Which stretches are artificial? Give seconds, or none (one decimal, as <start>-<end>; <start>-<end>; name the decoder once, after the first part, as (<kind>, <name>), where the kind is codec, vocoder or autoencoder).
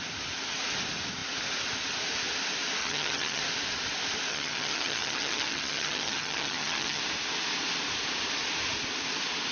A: 2.8-3.4 (vocoder, HiFi-GAN); 4.3-7.0